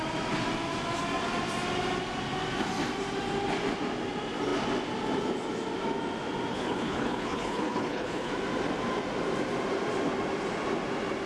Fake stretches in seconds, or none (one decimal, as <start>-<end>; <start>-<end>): 6.5-8.3